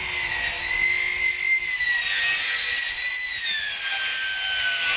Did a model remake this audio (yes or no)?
no